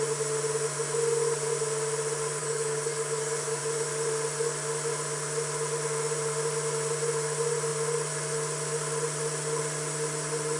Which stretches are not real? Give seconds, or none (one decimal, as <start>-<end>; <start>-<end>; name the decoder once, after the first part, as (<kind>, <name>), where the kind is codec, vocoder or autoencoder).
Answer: 2.4-3.6 (codec, DAC)